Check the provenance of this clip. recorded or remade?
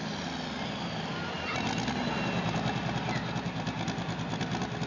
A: recorded